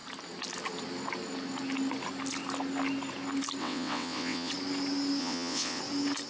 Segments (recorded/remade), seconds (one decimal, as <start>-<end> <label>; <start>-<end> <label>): 0.0-3.6 recorded; 3.6-4.5 remade; 4.5-5.2 recorded; 5.2-5.8 remade; 5.8-6.3 recorded

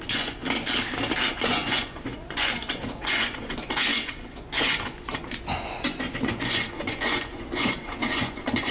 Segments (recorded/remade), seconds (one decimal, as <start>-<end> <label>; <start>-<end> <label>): 0.0-0.4 remade; 0.4-1.3 recorded; 1.3-8.7 remade